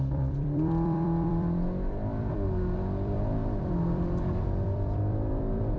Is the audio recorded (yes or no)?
no